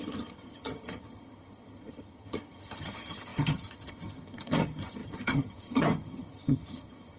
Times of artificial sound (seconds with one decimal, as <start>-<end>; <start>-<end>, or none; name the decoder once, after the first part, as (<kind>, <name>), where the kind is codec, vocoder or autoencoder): 0.0-7.2 (vocoder, HiFi-GAN)